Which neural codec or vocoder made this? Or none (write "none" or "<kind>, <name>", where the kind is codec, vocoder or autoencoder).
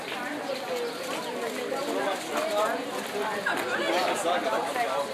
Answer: none